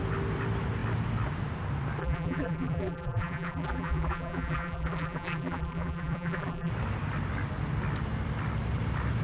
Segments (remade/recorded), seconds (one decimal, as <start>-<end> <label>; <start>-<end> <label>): 0.0-2.0 recorded; 2.0-6.7 remade; 6.7-9.2 recorded